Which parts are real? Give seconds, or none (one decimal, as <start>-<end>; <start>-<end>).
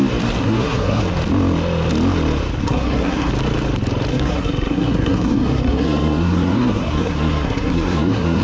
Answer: 0.0-0.4; 1.0-2.6; 3.3-4.1